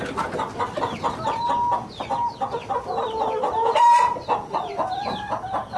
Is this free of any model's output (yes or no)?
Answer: yes